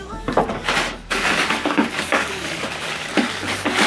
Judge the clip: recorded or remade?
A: remade